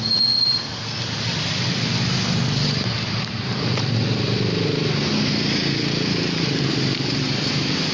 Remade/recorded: recorded